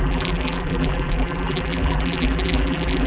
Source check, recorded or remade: remade